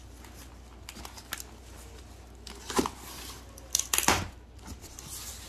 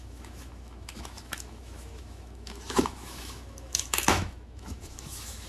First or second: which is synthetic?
second